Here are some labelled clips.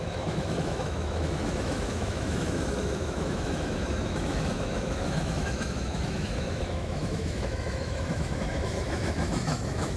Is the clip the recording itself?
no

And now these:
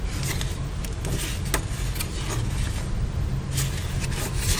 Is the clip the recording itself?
yes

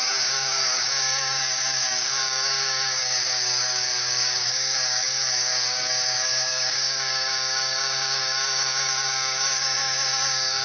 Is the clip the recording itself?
no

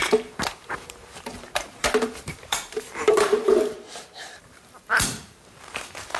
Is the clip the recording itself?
no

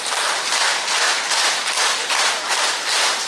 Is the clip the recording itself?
yes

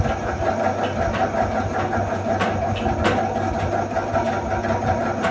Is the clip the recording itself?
yes